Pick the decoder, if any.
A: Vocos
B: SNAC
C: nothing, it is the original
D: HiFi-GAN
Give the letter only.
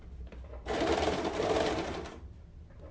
C